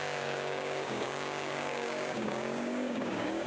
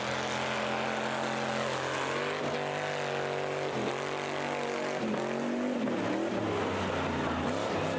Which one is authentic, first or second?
second